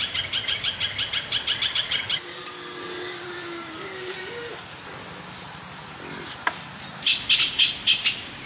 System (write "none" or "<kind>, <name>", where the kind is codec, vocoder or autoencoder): none